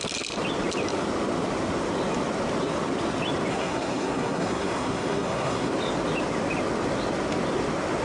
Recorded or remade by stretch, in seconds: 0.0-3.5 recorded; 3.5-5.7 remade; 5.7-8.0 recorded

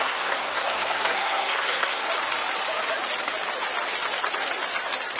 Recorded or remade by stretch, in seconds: 0.0-2.0 remade; 2.0-5.2 recorded

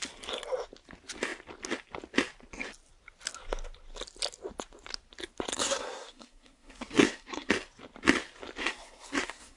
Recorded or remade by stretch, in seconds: 0.0-5.5 recorded; 5.5-7.5 remade; 7.5-8.6 recorded; 8.6-9.6 remade

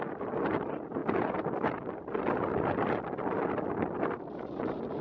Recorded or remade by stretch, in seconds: 0.0-5.0 recorded

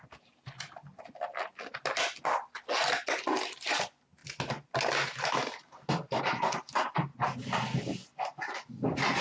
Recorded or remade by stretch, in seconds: 0.0-9.2 recorded

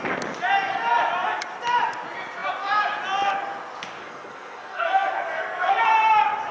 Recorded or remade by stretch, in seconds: 0.0-4.0 recorded; 4.0-5.8 remade; 5.8-6.5 recorded

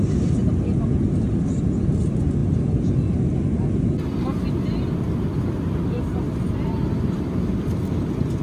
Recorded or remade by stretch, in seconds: 0.0-8.4 recorded

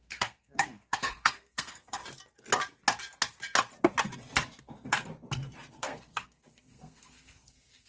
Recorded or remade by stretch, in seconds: 0.0-2.0 remade; 2.0-4.6 recorded; 4.6-5.1 remade; 5.1-5.7 recorded; 5.7-7.9 remade